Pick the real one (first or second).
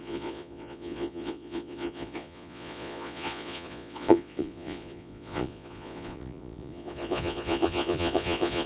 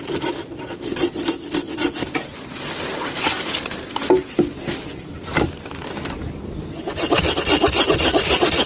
second